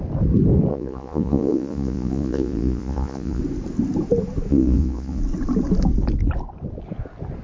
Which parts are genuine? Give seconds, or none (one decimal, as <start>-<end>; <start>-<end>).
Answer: 0.0-0.7; 3.4-4.5; 5.2-7.4

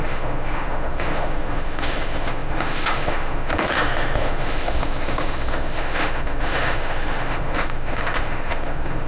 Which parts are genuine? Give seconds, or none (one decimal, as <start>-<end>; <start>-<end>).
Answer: none

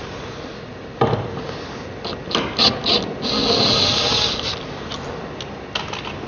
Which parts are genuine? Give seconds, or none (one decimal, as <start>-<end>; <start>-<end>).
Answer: 0.0-6.3

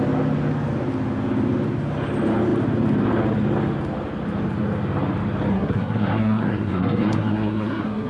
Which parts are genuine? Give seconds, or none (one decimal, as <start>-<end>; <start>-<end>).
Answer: 0.0-5.5